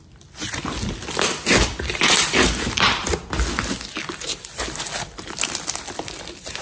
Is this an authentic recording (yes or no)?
yes